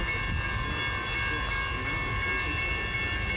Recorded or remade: recorded